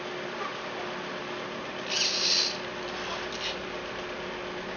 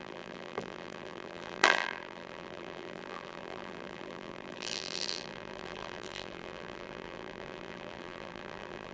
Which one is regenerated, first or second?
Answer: second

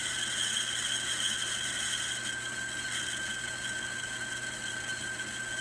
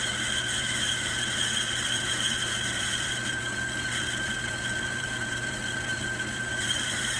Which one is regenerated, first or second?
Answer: second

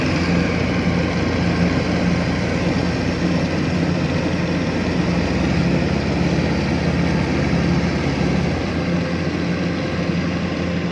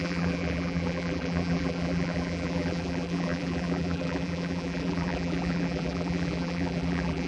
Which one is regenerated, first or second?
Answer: second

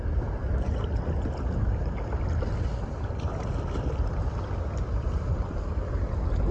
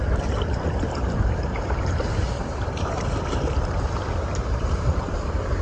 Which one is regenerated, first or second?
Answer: second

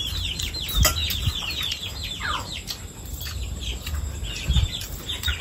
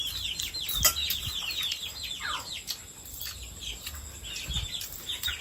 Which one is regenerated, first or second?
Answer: first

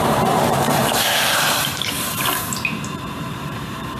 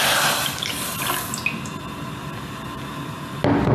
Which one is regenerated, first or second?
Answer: first